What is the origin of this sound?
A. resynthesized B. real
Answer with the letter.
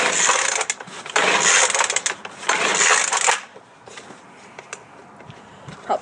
B